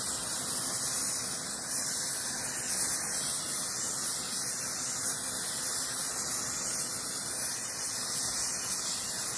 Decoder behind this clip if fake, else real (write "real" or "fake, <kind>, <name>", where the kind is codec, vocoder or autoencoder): real